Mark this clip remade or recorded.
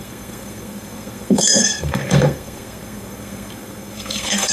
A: remade